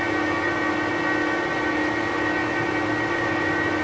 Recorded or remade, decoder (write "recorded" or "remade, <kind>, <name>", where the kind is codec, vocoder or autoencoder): recorded